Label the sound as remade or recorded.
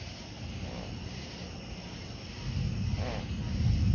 recorded